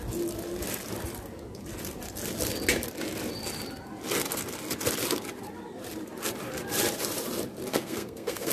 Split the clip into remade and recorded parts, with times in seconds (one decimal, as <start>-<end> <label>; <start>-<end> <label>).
0.0-7.7 recorded; 7.7-8.5 remade